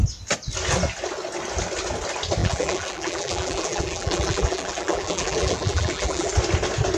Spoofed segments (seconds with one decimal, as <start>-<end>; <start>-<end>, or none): 2.4-6.3